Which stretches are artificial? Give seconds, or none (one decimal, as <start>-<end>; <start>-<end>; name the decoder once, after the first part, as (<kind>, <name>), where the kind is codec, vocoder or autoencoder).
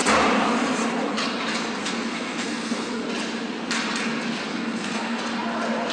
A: 1.8-3.1 (codec, SNAC); 4.5-5.2